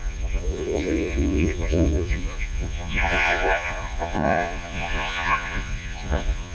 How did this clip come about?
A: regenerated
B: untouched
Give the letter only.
A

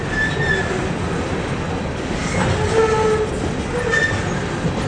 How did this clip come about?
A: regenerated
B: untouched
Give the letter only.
B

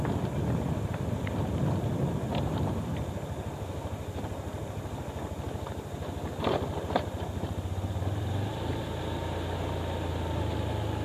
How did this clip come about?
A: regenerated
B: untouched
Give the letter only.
B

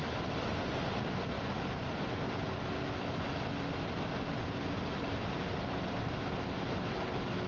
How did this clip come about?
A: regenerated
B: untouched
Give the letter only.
B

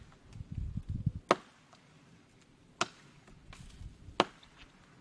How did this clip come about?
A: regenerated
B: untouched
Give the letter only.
B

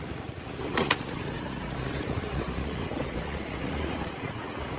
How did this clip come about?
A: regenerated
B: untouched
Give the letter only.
A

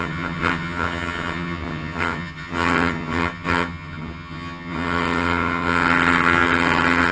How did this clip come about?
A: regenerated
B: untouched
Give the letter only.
A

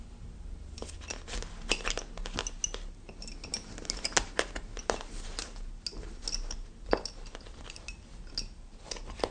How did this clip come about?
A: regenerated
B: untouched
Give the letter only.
B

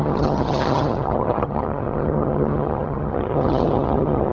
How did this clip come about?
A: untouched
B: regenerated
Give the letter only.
B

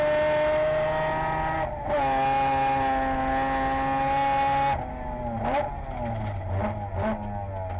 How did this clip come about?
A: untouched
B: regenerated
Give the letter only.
A